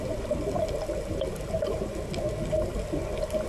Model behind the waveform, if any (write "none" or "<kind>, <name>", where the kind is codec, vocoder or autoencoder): none